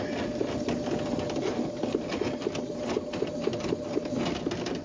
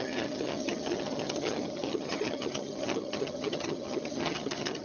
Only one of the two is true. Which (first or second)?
first